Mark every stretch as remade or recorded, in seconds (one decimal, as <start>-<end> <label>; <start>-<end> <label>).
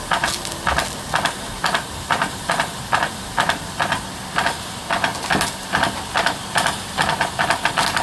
0.0-8.0 remade